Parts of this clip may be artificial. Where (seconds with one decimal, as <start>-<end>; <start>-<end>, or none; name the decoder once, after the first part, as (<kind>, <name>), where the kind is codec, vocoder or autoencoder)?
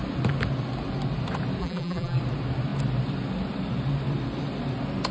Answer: 1.6-2.2 (vocoder, BigVGAN v2)